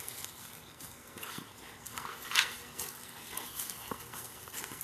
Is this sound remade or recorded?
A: remade